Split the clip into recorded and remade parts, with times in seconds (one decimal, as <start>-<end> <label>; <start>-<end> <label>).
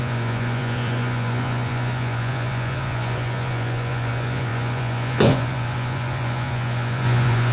0.0-7.5 remade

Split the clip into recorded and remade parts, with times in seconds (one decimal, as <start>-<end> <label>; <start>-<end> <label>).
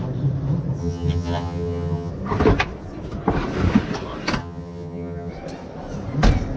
0.0-0.8 recorded; 0.8-2.1 remade; 2.1-4.4 recorded; 4.4-5.3 remade; 5.3-6.6 recorded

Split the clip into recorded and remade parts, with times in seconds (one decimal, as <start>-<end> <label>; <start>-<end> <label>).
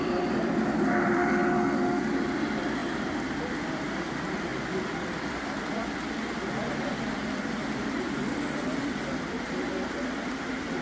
0.0-1.4 remade; 1.4-2.2 recorded; 2.2-2.8 remade; 2.8-3.7 recorded; 3.7-10.8 remade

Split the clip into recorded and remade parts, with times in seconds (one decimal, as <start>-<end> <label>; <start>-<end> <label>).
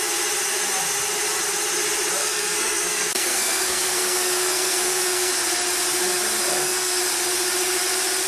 0.0-2.2 recorded; 2.2-5.3 remade; 5.3-6.5 recorded; 6.5-7.0 remade; 7.0-8.3 recorded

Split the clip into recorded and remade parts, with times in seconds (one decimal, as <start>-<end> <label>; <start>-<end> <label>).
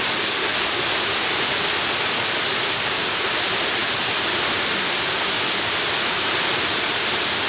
0.0-7.5 recorded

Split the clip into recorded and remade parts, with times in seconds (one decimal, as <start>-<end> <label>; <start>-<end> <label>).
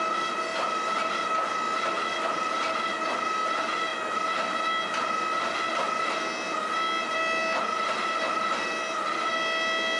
0.0-10.0 recorded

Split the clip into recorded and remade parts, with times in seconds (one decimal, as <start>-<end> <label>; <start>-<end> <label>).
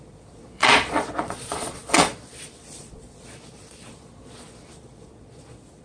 0.0-5.8 remade